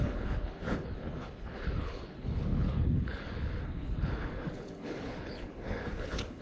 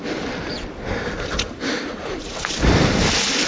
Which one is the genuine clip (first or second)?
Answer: second